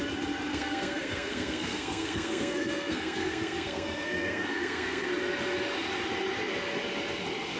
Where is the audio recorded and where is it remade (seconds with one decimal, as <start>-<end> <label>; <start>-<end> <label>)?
0.0-0.5 recorded; 0.5-5.1 remade; 5.1-7.6 recorded